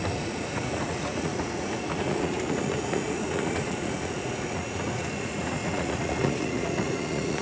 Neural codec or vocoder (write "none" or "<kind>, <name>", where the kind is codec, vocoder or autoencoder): vocoder, Vocos